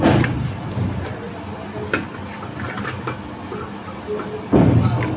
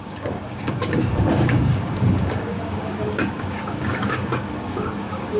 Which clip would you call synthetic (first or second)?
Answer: second